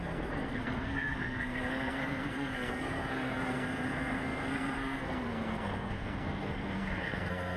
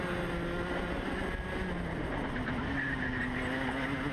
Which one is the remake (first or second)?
first